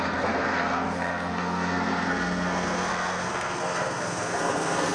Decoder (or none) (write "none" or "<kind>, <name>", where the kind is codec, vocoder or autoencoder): codec, SNAC